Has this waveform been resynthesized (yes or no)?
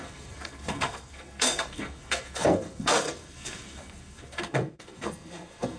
yes